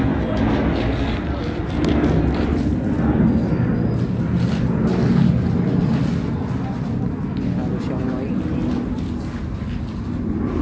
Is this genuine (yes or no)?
yes